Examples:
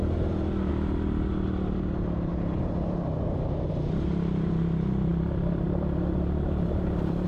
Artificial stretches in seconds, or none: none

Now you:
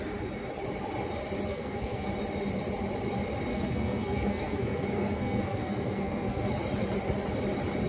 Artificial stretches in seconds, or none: 1.5-2.1 (codec, SNAC); 3.5-6.5

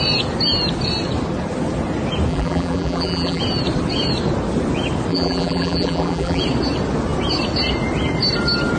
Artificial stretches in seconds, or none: 2.3-3.4 (vocoder, BigVGAN v2); 5.1-6.4

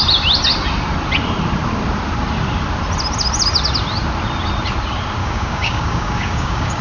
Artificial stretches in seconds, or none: 5.2-6.8 (codec, DAC)

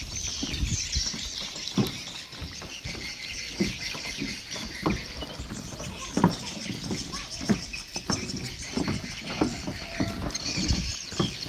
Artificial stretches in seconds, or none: 0.0-11.5 (vocoder, BigVGAN v2)

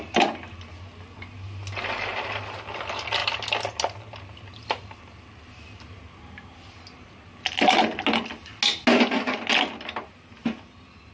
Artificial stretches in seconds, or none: none